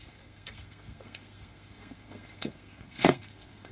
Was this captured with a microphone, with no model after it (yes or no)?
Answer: no